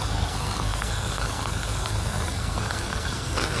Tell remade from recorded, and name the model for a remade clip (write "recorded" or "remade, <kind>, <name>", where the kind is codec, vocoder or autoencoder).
remade, codec, SNAC